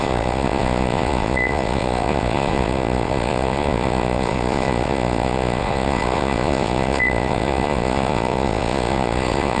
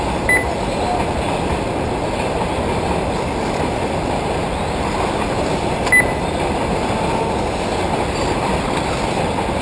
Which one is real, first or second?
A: second